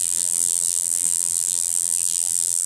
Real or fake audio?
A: fake